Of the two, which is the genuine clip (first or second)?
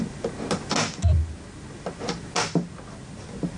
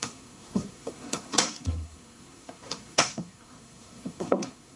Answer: first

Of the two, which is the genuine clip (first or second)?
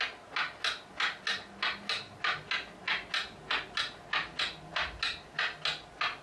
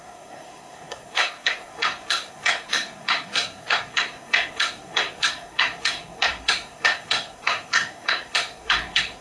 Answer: first